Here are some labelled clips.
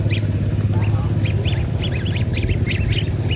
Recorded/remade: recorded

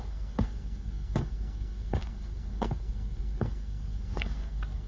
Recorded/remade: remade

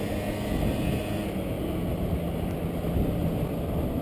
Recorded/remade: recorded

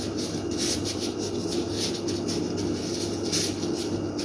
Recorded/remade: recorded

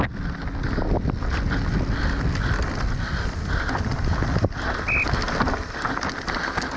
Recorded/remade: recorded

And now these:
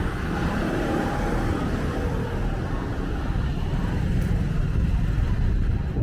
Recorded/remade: recorded